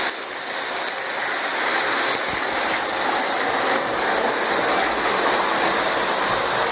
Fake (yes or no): no